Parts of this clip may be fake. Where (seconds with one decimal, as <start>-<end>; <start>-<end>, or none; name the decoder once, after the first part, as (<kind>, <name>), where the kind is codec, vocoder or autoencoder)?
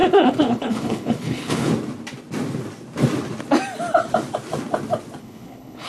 0.0-1.7 (codec, HILCodec); 5.2-5.9